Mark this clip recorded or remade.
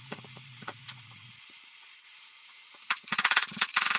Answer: remade